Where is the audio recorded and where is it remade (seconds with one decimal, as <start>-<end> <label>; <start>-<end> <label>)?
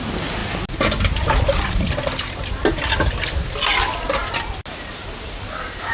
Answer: 0.0-5.9 recorded